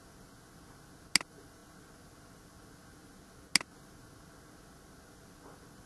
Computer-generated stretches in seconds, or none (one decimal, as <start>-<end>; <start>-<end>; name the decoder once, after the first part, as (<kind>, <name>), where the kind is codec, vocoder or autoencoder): none